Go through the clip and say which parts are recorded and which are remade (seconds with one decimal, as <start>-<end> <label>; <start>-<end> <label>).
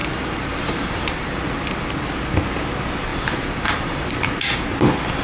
0.0-1.4 remade; 1.4-3.1 recorded; 3.1-4.1 remade; 4.1-5.2 recorded